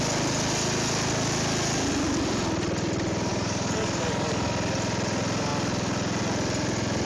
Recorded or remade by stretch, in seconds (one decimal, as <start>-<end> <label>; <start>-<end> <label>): 0.0-3.3 recorded; 3.3-4.5 remade; 4.5-7.1 recorded